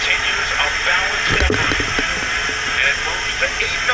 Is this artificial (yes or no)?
no